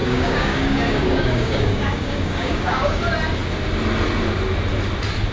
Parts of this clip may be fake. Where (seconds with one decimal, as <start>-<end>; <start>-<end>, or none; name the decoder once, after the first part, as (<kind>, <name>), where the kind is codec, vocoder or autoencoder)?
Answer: 0.0-3.0 (codec, DAC)